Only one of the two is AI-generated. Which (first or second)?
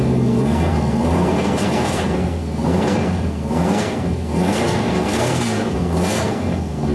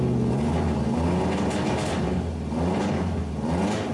first